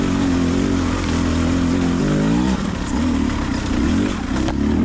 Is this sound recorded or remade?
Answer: recorded